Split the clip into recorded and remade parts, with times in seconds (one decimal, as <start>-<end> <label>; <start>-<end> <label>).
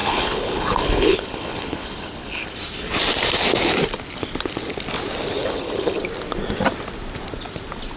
0.0-2.5 remade; 2.5-5.4 recorded; 5.4-6.0 remade; 6.0-8.0 recorded